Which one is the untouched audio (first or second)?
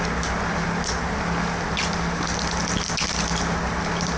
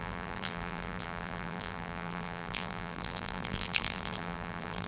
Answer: first